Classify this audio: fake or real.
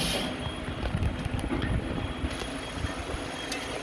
real